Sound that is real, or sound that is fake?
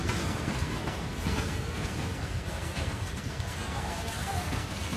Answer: fake